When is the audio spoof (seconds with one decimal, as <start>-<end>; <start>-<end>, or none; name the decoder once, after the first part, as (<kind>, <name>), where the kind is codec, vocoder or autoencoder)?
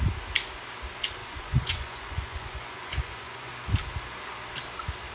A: 1.2-3.5 (vocoder, Vocos)